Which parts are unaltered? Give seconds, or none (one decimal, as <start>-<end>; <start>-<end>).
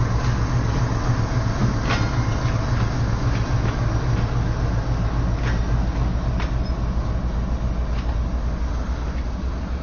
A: 0.0-9.8